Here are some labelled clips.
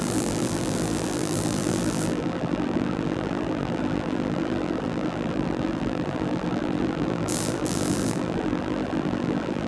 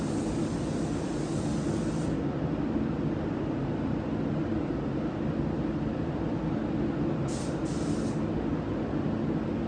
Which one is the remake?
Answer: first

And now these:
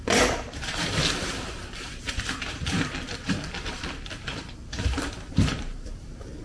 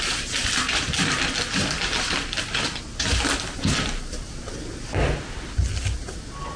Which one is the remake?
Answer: first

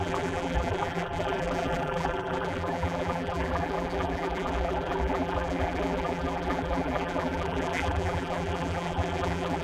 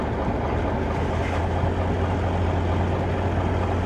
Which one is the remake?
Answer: first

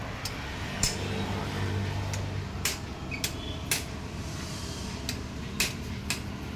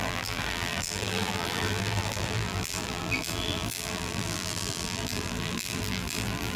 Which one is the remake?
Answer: second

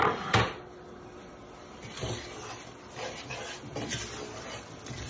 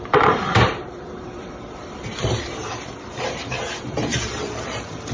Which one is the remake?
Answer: second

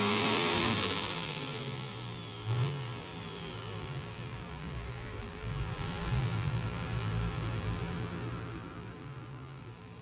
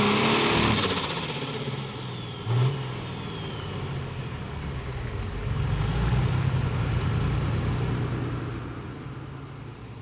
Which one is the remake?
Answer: first